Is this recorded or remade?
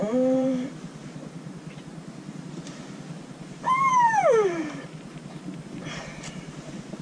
remade